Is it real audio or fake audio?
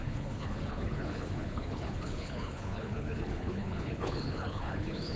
fake